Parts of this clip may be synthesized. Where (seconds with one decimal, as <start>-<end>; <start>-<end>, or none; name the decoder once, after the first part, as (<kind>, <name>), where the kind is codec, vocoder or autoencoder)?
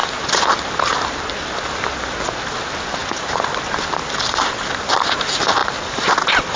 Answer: none